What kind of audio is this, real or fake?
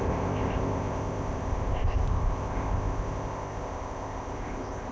fake